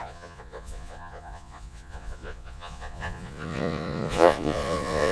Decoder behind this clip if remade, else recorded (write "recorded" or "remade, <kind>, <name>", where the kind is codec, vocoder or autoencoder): remade, vocoder, Vocos